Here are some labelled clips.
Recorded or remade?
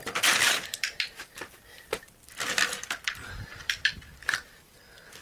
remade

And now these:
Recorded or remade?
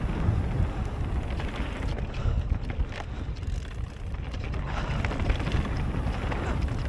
recorded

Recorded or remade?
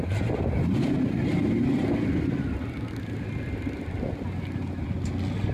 recorded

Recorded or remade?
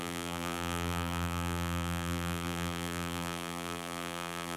remade